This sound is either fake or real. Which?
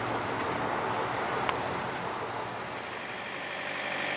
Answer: real